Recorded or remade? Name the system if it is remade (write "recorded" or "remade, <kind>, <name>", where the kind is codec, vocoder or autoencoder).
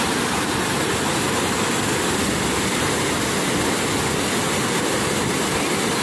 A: recorded